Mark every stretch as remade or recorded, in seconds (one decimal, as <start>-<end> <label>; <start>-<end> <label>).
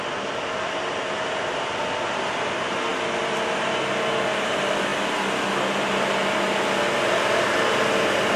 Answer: 0.0-8.4 recorded